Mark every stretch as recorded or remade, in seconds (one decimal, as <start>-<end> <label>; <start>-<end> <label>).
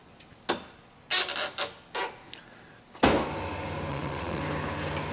0.0-3.9 recorded; 3.9-4.4 remade; 4.4-5.1 recorded